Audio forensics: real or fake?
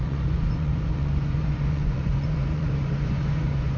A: fake